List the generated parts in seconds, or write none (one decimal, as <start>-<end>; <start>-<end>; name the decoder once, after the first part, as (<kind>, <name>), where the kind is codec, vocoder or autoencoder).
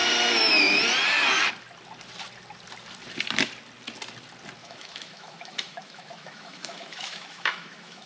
4.6-8.1 (autoencoder, DAC-VAE)